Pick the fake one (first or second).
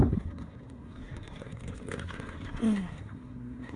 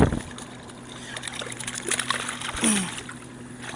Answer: first